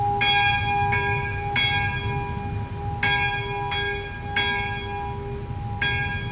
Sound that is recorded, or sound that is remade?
recorded